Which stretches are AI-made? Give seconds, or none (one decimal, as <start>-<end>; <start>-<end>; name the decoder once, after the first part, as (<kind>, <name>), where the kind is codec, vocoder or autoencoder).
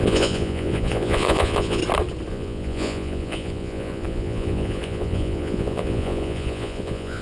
0.0-1.8 (vocoder, Vocos); 2.3-7.2